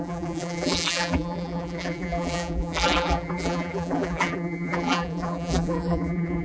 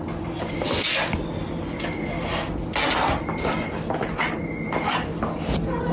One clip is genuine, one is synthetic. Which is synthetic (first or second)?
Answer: first